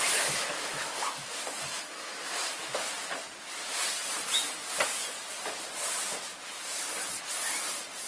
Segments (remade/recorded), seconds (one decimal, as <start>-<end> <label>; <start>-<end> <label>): 0.0-0.7 recorded; 0.7-2.7 remade; 2.7-8.1 recorded